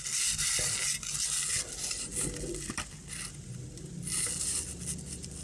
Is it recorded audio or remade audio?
recorded